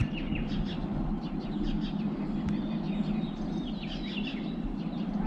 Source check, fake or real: real